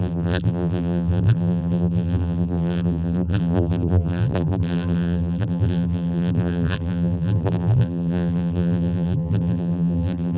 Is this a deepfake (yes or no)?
yes